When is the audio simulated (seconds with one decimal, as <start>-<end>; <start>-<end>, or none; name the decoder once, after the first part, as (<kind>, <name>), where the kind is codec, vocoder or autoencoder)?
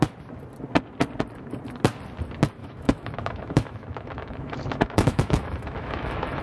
2.6-6.4 (autoencoder, DAC-VAE)